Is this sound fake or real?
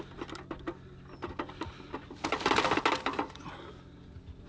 real